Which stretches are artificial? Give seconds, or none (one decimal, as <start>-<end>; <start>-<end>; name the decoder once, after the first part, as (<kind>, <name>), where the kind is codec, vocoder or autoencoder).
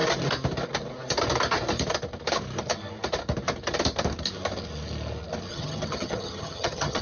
5.5-7.0 (vocoder, HiFi-GAN)